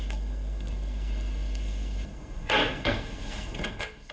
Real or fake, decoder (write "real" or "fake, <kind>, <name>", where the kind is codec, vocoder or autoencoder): fake, codec, SNAC